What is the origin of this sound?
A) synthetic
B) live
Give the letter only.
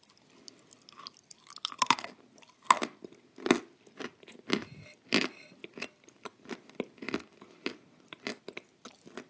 B